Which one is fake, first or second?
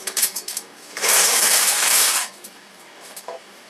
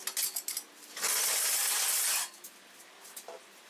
first